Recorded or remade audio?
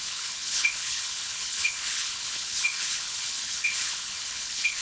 remade